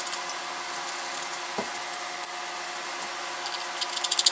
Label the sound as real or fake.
real